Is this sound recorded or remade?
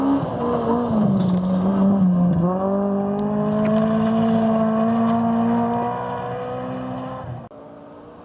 recorded